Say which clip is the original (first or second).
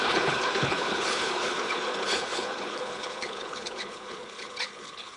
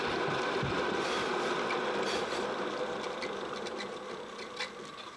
second